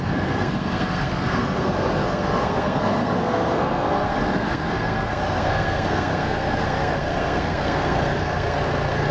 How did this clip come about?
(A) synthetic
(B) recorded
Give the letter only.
A